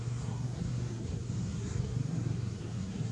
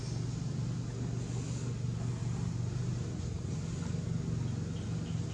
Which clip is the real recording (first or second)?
second